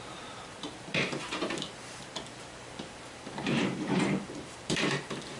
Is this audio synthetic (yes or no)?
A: yes